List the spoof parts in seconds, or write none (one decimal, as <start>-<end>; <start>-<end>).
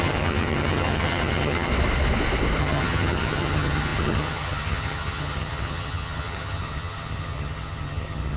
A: 0.0-1.7; 2.6-8.4